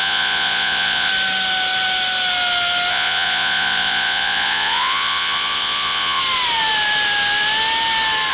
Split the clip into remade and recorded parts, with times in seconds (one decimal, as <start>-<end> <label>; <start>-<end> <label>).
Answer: 0.0-1.1 remade; 1.1-2.9 recorded; 2.9-6.2 remade; 6.2-8.3 recorded